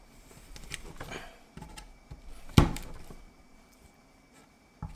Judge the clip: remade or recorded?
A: remade